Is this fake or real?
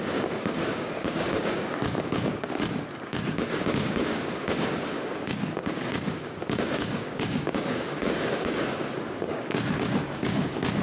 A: fake